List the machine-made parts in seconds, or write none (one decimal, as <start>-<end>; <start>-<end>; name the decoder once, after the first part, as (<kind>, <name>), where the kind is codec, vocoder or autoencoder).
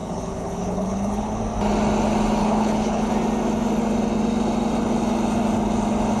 0.0-1.4 (codec, HILCodec); 2.4-3.1